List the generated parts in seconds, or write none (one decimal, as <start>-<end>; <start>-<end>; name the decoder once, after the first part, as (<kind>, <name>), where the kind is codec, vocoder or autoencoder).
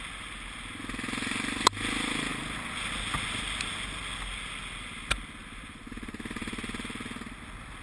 2.3-2.8 (vocoder, BigVGAN v2)